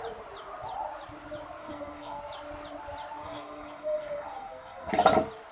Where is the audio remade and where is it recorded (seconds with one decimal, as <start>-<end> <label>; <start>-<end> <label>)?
0.0-1.6 recorded; 1.6-2.2 remade; 2.2-3.2 recorded; 3.2-4.9 remade; 4.9-5.5 recorded